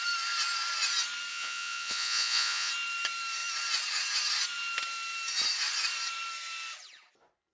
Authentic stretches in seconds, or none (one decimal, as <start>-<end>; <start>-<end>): 0.0-1.3; 2.7-7.5